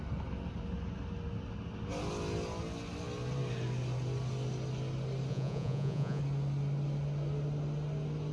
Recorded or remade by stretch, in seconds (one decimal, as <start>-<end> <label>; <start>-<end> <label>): 0.0-5.3 recorded; 5.3-6.2 remade; 6.2-8.3 recorded